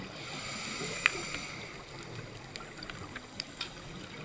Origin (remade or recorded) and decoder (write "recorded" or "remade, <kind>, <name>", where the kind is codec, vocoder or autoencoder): recorded